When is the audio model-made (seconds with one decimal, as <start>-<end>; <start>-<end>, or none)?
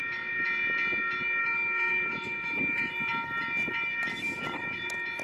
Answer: 1.4-2.9; 4.1-4.6